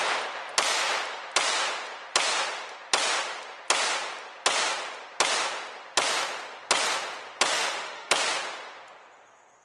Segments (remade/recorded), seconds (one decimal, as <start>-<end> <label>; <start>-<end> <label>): 0.0-7.5 recorded; 7.5-8.1 remade; 8.1-9.6 recorded